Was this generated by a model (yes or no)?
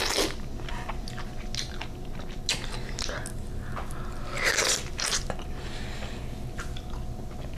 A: no